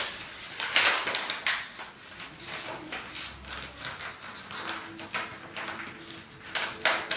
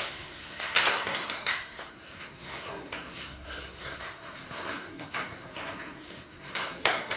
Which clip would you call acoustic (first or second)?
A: first